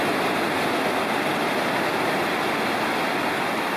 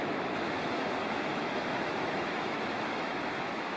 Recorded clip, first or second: first